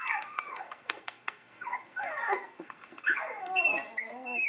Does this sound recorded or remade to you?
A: remade